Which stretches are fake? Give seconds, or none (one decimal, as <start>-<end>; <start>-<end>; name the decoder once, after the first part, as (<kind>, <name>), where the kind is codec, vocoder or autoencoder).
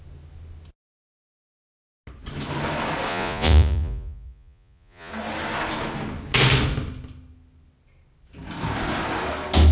3.1-5.1 (vocoder, Vocos)